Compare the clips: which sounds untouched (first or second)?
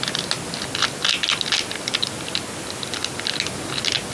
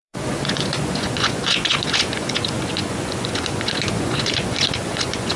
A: first